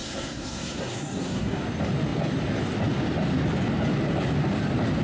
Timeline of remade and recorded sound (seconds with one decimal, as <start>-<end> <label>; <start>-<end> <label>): 0.0-1.6 remade; 1.6-5.0 recorded